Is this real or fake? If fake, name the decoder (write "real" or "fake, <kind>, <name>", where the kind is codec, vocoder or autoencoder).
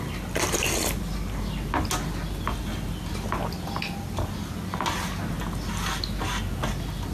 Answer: real